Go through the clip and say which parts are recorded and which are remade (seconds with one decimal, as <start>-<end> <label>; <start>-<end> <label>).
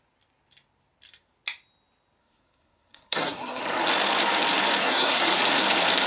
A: 0.0-2.2 recorded; 2.2-3.6 remade; 3.6-4.8 recorded; 4.8-5.4 remade; 5.4-6.1 recorded